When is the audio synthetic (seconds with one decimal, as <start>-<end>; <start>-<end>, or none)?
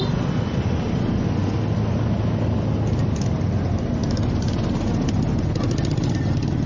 none